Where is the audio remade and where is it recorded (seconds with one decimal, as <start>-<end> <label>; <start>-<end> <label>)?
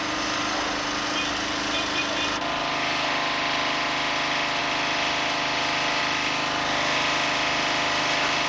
0.0-8.5 recorded